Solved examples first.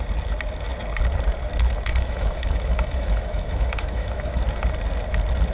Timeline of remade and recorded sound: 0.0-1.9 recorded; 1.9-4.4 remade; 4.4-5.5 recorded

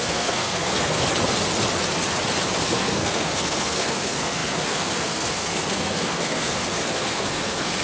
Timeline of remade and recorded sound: 0.0-1.1 remade; 1.1-2.6 recorded; 2.6-7.8 remade

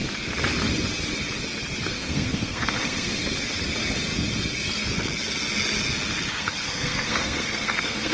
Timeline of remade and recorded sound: 0.0-1.9 recorded; 1.9-3.2 remade; 3.2-6.3 recorded; 6.3-8.1 remade

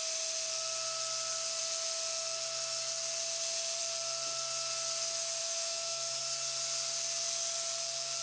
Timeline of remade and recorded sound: 0.0-5.4 recorded; 5.4-6.2 remade; 6.2-8.2 recorded

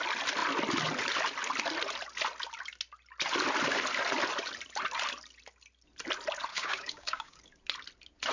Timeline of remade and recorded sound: 0.0-6.5 recorded; 6.5-7.4 remade; 7.4-8.3 recorded

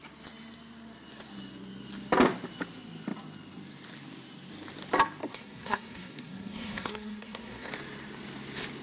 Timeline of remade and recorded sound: 0.0-5.2 recorded; 5.2-7.7 remade; 7.7-8.8 recorded

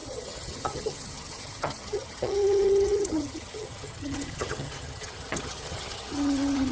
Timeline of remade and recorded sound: 0.0-6.7 remade